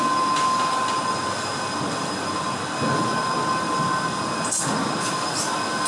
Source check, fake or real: real